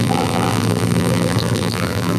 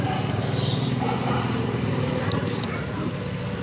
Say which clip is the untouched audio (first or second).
second